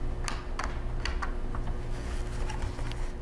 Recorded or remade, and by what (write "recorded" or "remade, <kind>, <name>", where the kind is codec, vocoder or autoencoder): recorded